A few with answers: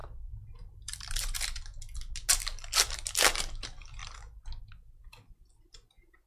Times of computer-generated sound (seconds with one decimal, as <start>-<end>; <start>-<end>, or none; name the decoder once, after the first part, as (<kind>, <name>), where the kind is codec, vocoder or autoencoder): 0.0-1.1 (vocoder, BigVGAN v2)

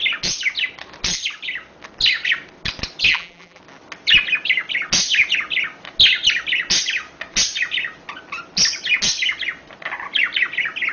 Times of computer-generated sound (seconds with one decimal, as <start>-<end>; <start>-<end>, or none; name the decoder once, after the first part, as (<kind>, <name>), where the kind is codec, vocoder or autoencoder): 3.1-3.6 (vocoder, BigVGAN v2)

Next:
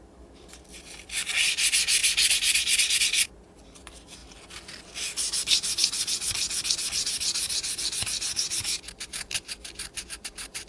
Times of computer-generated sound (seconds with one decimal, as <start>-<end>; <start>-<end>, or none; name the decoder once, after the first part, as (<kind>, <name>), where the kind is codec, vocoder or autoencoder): 0.0-4.2 (vocoder, BigVGAN v2); 9.0-10.7

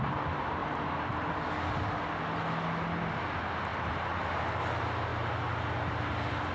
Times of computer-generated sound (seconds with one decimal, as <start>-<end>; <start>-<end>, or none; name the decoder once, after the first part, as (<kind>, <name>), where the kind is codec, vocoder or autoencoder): 0.6-1.1 (vocoder, BigVGAN v2); 3.7-4.4

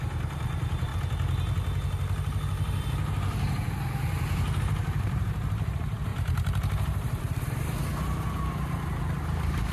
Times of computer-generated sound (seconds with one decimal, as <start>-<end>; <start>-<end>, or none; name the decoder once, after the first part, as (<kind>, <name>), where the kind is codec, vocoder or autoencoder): 0.0-0.9 (vocoder, BigVGAN v2); 4.6-7.9; 8.7-9.7

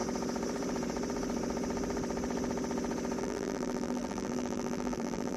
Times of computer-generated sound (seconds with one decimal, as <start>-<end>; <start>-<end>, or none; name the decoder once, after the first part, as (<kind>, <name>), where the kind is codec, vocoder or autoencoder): 3.2-5.4 (vocoder, BigVGAN v2)

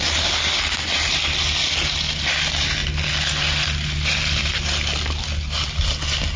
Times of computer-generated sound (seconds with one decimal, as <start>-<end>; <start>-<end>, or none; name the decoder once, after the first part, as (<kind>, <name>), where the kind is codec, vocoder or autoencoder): none